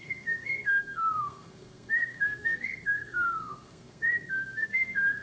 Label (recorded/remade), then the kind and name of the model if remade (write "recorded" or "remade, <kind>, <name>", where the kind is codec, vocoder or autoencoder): remade, codec, SNAC